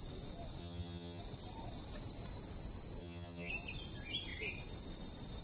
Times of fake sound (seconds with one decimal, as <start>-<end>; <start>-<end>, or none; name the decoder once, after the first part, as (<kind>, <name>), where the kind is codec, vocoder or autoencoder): 0.6-1.2 (vocoder, HiFi-GAN); 3.0-3.5